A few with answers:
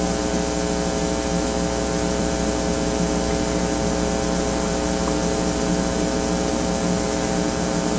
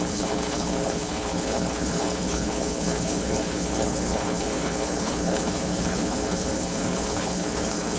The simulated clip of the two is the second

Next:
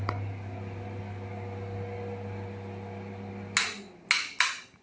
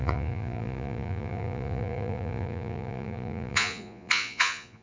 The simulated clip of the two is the second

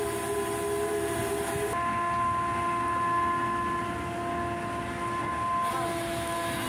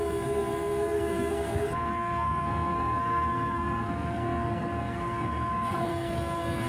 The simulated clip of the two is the second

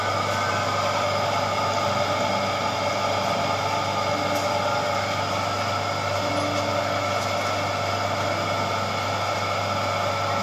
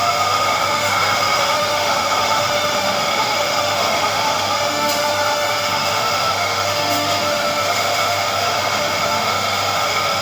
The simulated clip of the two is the second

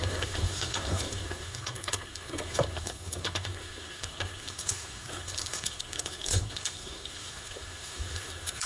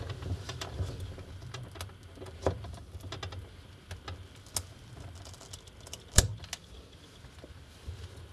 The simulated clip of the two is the first